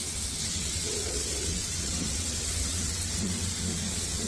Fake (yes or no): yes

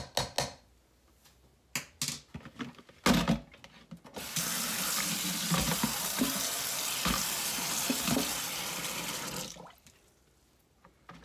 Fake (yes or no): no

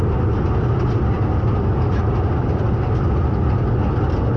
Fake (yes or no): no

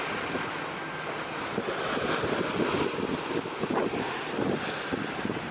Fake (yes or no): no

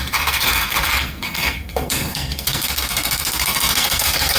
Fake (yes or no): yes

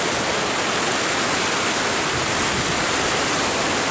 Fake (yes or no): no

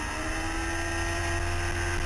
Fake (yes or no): no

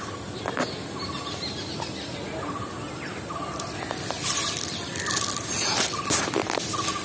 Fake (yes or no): no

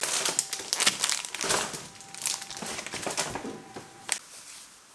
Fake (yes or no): no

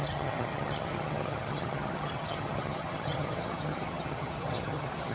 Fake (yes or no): yes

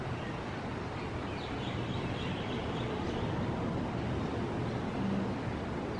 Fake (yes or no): no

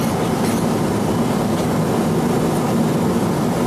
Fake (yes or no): no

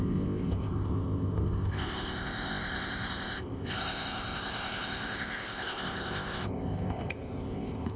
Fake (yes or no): yes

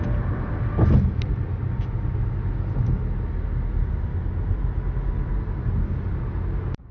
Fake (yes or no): no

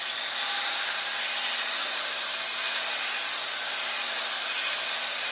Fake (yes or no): no